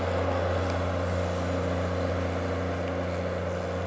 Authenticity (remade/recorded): recorded